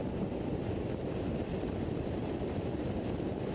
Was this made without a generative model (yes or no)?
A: yes